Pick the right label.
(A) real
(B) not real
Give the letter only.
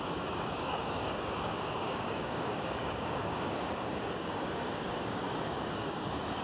B